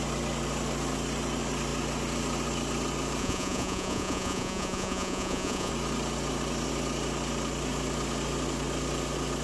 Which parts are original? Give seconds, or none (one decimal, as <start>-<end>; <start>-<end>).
0.0-3.2; 5.7-9.4